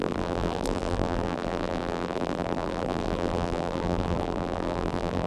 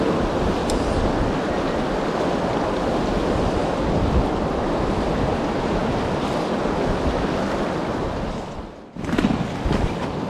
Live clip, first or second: second